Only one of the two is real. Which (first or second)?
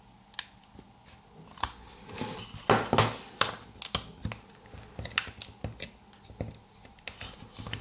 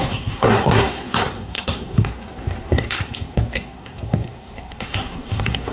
first